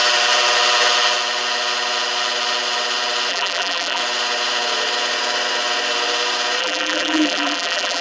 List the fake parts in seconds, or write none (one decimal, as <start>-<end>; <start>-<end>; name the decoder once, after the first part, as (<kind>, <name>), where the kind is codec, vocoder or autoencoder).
3.3-4.0 (vocoder, BigVGAN v2); 6.6-8.0